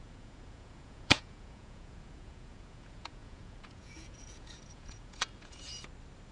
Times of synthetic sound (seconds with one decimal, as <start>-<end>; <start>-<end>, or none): 0.0-5.7

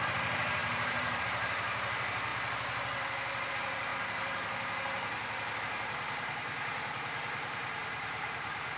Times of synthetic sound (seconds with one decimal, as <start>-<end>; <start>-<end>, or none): 0.0-2.3; 3.5-3.9; 5.6-8.8

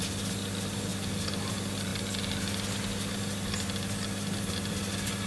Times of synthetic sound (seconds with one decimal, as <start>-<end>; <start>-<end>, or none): none

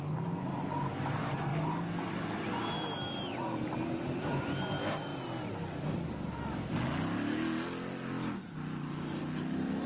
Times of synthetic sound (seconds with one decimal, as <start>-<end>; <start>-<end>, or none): none